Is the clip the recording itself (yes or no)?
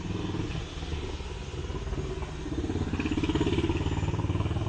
yes